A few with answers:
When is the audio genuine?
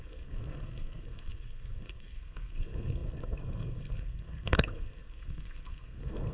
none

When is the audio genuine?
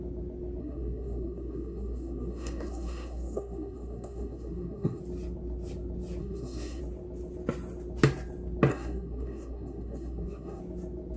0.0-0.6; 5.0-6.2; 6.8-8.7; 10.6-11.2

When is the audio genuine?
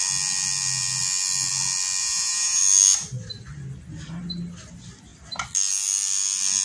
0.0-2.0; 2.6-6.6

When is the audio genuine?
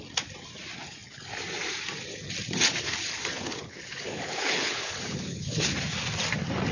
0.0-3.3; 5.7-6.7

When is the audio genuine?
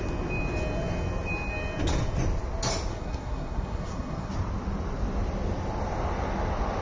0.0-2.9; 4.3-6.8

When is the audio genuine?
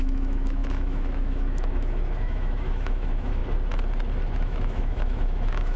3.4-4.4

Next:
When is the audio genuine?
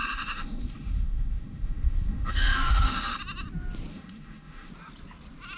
3.2-3.9; 4.7-5.6